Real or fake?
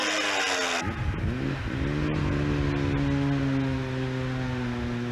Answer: real